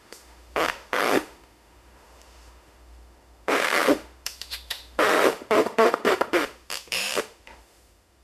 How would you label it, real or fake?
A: fake